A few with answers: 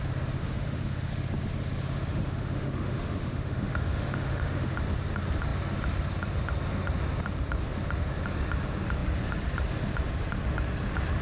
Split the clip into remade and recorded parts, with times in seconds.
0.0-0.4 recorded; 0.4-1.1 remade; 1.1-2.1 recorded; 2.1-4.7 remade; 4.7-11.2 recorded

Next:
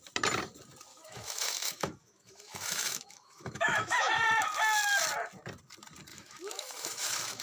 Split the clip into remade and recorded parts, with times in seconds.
0.0-0.9 recorded; 0.9-4.1 remade; 4.1-6.1 recorded; 6.1-7.4 remade

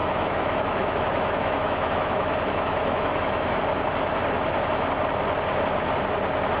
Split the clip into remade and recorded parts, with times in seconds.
0.0-3.6 remade; 3.6-6.6 recorded

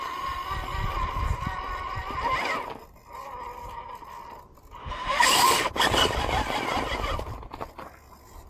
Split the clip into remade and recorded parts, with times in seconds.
0.0-4.8 recorded; 4.8-5.7 remade; 5.7-8.5 recorded

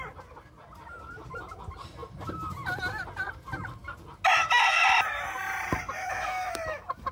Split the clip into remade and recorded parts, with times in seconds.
0.0-6.0 recorded; 6.0-7.1 remade

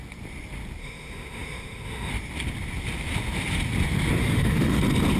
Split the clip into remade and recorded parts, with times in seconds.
0.0-0.8 recorded; 0.8-2.1 remade; 2.1-4.2 recorded; 4.2-4.8 remade; 4.8-5.2 recorded